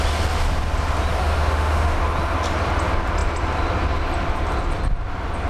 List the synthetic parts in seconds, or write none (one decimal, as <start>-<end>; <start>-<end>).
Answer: 1.2-2.0